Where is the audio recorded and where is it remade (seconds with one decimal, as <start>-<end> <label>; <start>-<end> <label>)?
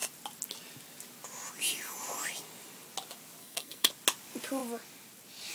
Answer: 0.0-3.4 recorded; 3.4-3.9 remade; 3.9-5.5 recorded